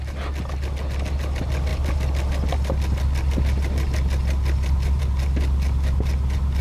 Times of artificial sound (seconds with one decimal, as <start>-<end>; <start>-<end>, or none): none